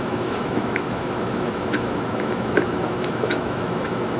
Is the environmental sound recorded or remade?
remade